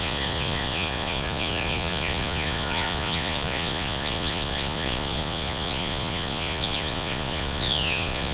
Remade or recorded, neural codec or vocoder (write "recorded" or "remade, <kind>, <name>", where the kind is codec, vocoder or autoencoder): remade, vocoder, Vocos